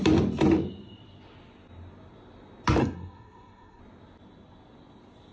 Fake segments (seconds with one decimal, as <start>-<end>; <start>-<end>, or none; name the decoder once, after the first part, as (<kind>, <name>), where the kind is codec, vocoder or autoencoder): 2.8-3.8 (codec, SNAC)